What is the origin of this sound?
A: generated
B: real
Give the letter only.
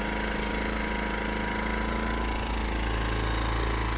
B